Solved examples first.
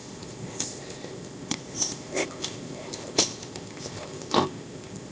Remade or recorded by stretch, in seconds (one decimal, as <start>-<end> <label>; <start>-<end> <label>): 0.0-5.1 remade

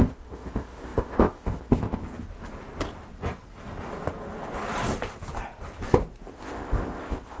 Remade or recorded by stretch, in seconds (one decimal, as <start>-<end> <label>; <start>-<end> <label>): 0.0-2.0 remade; 2.0-6.3 recorded; 6.3-7.4 remade

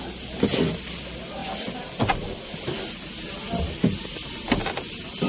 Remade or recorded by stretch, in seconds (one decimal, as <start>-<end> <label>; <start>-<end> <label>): 0.0-5.3 recorded

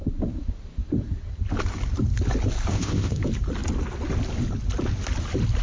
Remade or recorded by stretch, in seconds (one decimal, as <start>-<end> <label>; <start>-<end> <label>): 0.0-2.7 recorded; 2.7-3.2 remade; 3.2-5.6 recorded

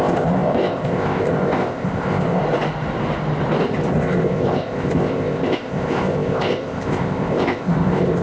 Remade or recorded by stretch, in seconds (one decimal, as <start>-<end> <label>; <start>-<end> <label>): 0.0-2.4 remade; 2.4-3.9 recorded; 3.9-8.2 remade

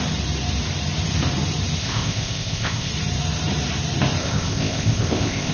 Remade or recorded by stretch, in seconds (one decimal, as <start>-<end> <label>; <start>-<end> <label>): 0.0-1.8 recorded; 1.8-2.9 remade; 2.9-4.2 recorded; 4.2-5.5 remade